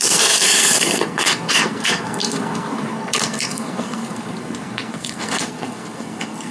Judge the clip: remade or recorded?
remade